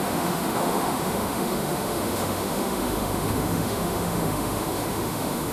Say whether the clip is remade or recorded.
remade